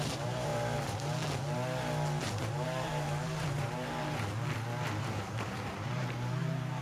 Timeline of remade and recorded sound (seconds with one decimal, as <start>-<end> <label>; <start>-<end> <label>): 0.0-0.5 remade; 0.5-2.2 recorded; 2.2-4.1 remade; 4.1-5.0 recorded; 5.0-6.8 remade